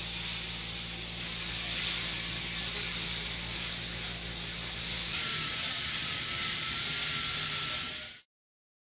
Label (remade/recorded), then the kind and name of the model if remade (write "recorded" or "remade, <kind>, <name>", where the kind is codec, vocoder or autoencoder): recorded